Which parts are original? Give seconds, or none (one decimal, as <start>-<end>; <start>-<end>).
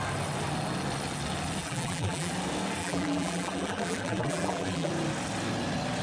0.0-1.6; 2.3-2.8; 4.9-6.0